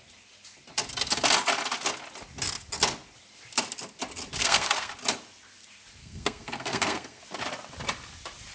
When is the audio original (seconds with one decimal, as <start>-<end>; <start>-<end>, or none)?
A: 0.0-4.4; 4.9-6.0; 7.2-8.5